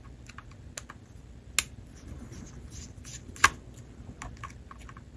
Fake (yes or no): no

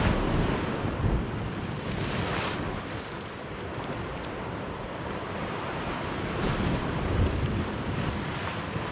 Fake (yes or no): yes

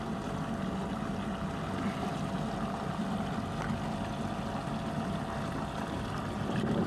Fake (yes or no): no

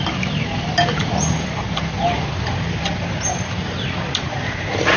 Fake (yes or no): no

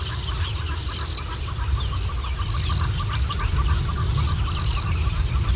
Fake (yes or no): yes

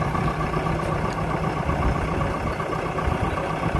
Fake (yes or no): no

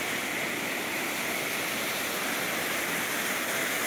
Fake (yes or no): no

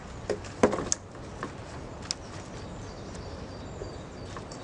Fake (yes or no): no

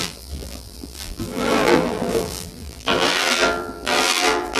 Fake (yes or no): yes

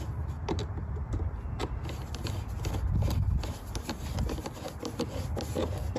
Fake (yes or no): no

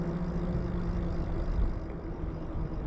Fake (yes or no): no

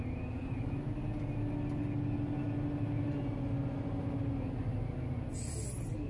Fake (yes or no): no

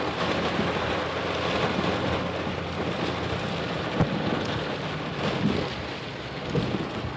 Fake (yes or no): no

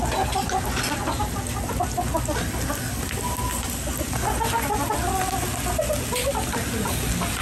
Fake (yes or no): no